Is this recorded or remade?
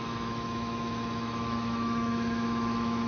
remade